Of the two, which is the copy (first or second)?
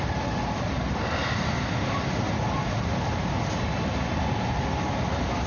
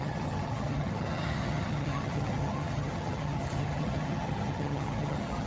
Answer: second